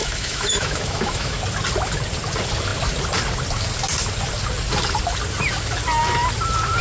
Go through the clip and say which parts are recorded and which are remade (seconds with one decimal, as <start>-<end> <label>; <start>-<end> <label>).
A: 0.0-1.4 remade; 1.4-6.8 recorded